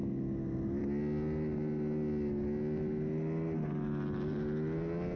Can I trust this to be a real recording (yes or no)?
yes